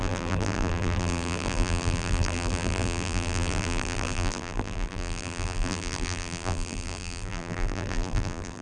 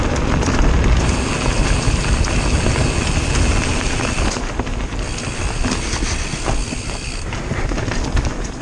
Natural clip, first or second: second